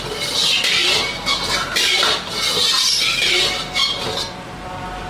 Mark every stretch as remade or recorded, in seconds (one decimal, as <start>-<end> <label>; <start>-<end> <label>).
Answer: 0.0-5.1 recorded